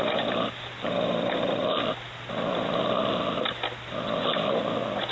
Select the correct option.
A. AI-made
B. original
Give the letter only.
B